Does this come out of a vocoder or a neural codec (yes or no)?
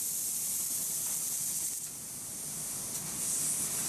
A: no